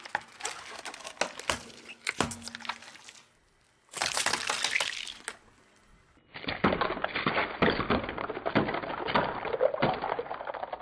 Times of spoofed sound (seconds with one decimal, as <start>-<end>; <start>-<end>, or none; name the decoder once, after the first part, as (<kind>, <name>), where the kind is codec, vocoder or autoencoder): 4.0-4.7 (vocoder, BigVGAN v2)